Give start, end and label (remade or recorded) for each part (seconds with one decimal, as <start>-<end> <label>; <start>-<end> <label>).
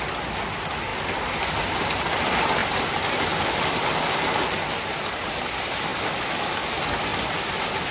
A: 0.0-7.9 recorded